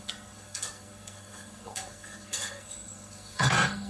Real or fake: fake